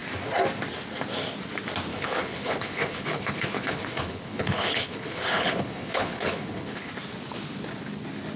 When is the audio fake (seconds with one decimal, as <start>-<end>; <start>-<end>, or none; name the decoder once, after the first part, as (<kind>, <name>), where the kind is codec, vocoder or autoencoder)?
1.9-6.9 (codec, HILCodec)